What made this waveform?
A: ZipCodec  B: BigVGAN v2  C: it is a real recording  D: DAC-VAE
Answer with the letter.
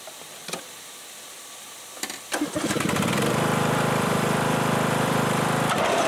B